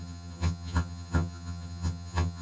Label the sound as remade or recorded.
remade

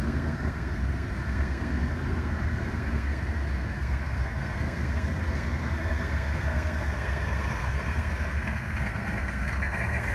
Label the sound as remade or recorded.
remade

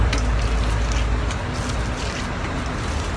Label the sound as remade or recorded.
recorded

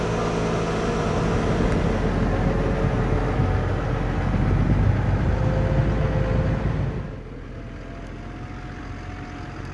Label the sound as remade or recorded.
recorded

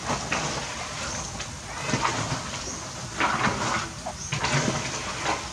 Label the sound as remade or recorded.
recorded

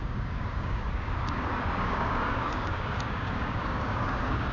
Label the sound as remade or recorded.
remade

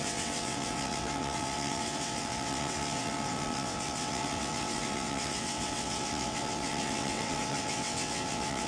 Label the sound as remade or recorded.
remade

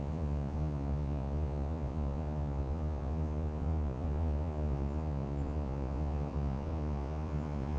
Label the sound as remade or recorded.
remade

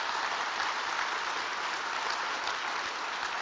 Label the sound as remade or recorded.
recorded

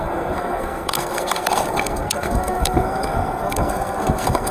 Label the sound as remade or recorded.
remade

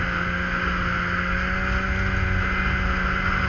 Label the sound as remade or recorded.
recorded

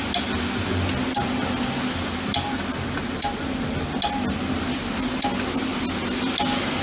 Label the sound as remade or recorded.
recorded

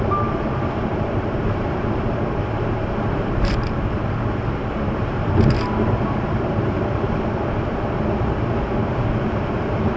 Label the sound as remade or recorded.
remade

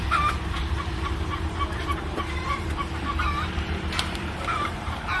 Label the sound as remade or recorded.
remade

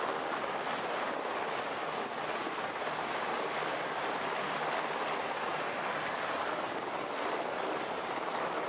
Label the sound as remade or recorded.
recorded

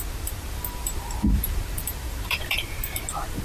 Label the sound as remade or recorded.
remade